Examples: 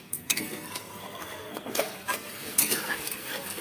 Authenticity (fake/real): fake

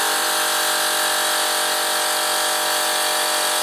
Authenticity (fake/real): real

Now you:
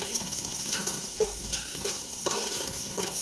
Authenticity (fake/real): fake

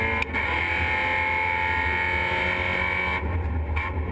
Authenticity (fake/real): real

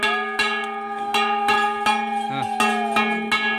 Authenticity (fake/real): real